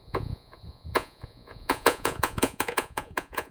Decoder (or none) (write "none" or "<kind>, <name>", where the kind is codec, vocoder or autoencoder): vocoder, Vocos